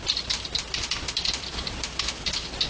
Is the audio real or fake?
real